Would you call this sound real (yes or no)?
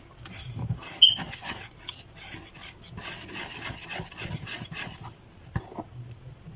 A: yes